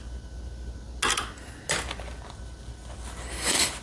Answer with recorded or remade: recorded